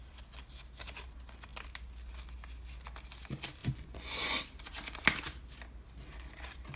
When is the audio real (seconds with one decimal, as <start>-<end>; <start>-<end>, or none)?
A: 0.0-3.6; 4.4-6.8